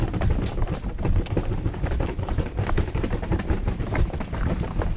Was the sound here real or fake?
fake